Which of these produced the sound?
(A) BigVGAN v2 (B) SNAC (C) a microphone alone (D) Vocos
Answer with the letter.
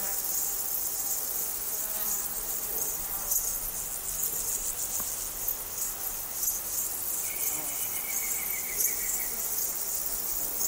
C